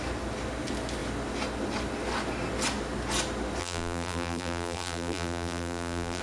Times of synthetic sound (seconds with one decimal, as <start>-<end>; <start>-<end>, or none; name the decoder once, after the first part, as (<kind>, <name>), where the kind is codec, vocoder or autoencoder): 3.6-6.2 (vocoder, BigVGAN v2)